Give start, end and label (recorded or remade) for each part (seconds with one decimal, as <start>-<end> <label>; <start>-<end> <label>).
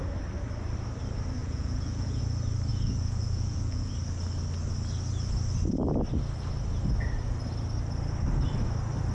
0.0-1.4 recorded; 1.4-2.2 remade; 2.2-2.7 recorded; 2.7-3.9 remade; 3.9-9.1 recorded